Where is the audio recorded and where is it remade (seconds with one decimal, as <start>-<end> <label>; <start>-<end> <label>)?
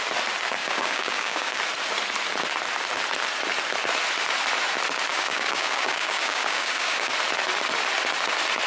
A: 0.0-0.6 recorded; 0.6-1.6 remade; 1.6-5.1 recorded; 5.1-7.1 remade; 7.1-8.7 recorded